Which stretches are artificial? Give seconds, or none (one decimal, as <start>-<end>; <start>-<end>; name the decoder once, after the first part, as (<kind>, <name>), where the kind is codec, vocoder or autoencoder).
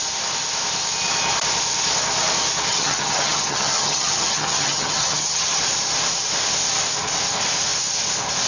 2.7-5.6 (vocoder, HiFi-GAN)